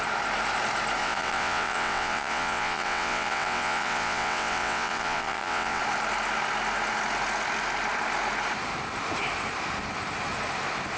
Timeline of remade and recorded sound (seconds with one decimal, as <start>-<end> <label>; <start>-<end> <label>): 0.0-1.0 recorded; 1.0-5.8 remade; 5.8-11.0 recorded